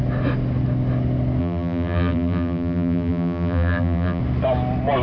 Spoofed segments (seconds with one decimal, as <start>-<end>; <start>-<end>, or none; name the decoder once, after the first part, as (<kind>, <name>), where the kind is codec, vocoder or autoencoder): 1.4-4.2 (vocoder, BigVGAN v2)